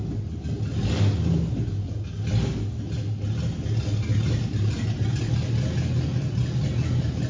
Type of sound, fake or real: real